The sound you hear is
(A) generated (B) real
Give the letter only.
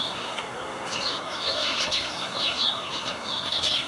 A